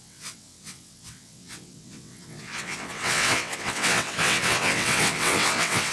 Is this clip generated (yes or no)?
yes